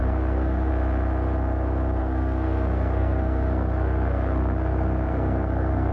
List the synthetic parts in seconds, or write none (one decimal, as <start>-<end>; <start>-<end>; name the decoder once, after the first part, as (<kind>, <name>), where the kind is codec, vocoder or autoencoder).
0.0-0.7 (codec, SNAC); 2.0-5.9